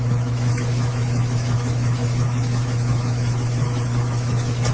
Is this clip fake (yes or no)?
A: yes